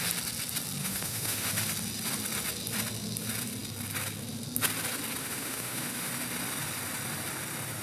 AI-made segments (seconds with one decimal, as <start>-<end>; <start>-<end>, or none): 0.8-1.5; 5.2-6.1